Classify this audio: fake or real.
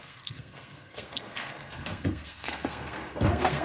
fake